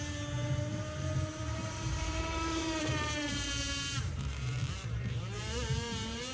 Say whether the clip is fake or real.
fake